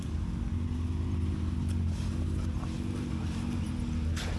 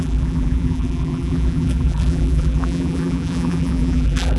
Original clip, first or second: first